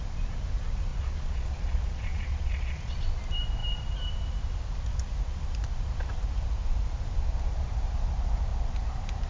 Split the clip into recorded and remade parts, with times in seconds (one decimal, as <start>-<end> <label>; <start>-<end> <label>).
0.0-0.9 recorded; 0.9-3.0 remade; 3.0-9.3 recorded